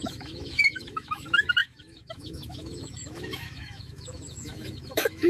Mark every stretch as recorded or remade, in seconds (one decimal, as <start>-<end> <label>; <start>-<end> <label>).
0.0-5.3 remade